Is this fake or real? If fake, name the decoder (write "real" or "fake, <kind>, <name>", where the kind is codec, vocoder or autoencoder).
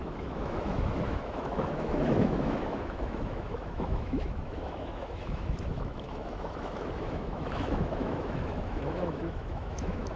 fake, autoencoder, DAC-VAE